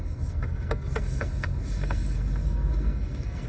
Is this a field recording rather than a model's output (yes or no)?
no